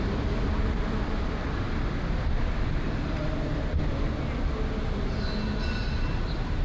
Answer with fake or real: real